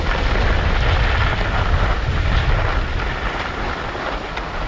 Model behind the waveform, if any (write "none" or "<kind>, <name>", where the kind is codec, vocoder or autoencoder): none